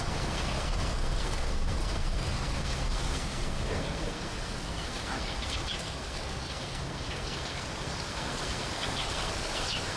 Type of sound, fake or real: fake